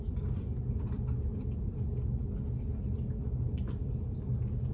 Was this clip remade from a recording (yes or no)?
no